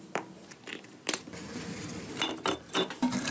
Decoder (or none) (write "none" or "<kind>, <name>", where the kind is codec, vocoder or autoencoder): vocoder, BigVGAN v2